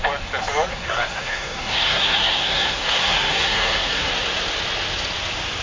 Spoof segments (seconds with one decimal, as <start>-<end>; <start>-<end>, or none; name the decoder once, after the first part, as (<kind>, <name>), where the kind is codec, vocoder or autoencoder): 0.7-4.1 (codec, SNAC)